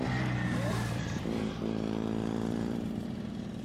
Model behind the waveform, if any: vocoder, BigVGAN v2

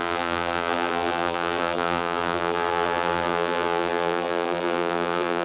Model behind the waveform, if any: vocoder, BigVGAN v2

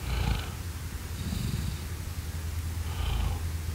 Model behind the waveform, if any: none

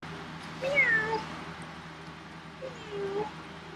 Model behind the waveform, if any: none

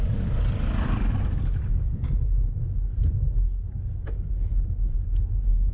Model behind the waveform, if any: none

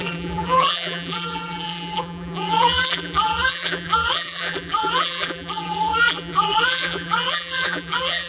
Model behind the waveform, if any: vocoder, BigVGAN v2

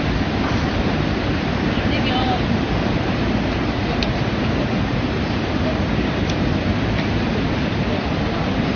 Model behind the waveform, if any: vocoder, BigVGAN v2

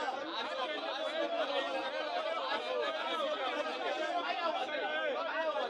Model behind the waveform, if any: none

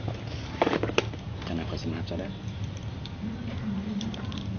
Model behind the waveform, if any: vocoder, BigVGAN v2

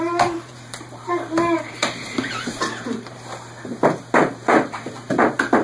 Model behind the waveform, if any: vocoder, BigVGAN v2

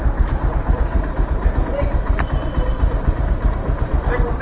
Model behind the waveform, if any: vocoder, BigVGAN v2